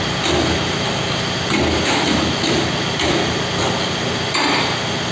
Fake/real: real